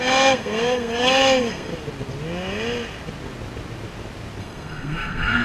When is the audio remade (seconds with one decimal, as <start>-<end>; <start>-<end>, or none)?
0.0-1.7; 4.4-5.4